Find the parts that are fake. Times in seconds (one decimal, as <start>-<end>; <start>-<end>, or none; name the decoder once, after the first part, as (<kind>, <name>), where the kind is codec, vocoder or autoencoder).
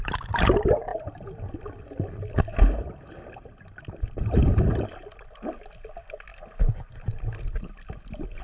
none